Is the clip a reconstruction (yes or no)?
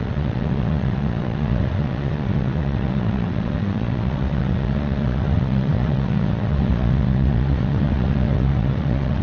yes